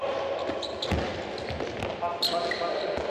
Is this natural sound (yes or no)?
yes